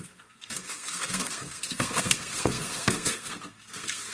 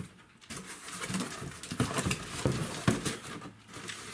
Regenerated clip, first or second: first